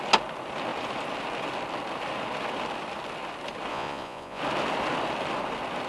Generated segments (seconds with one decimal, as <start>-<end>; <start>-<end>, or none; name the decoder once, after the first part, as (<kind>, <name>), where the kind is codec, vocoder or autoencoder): 3.7-4.4 (vocoder, Vocos)